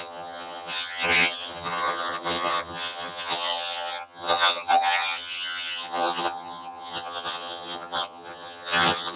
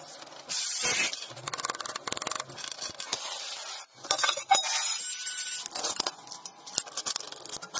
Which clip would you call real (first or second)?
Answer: second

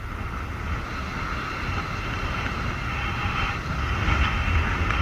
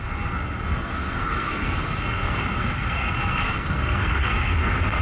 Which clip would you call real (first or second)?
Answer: first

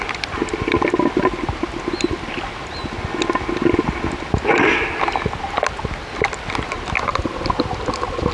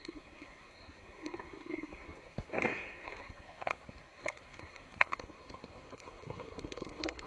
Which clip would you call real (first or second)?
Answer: first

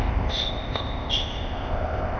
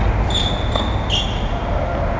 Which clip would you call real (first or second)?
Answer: second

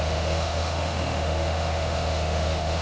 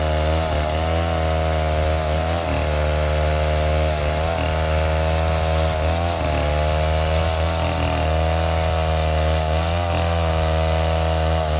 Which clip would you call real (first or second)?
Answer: second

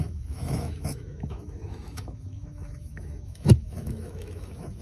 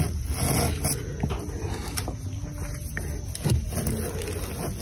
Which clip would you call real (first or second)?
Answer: second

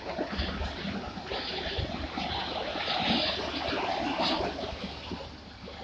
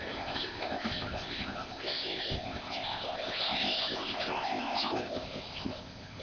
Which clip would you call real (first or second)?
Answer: first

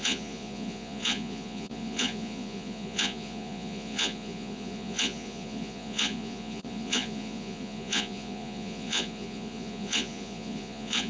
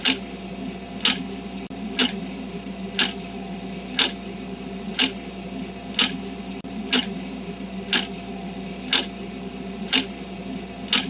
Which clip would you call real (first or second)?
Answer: second